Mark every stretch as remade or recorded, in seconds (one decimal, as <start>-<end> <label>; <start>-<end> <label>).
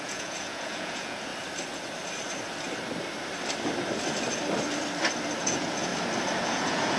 0.0-1.3 remade; 1.3-5.4 recorded; 5.4-5.9 remade; 5.9-6.4 recorded; 6.4-7.0 remade